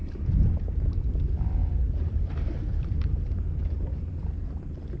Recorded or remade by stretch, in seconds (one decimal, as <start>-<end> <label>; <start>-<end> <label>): 0.0-0.6 remade; 0.6-1.6 recorded; 1.6-4.6 remade; 4.6-5.0 recorded